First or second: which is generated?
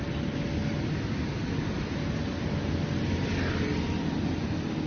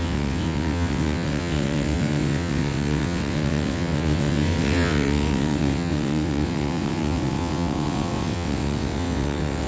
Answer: second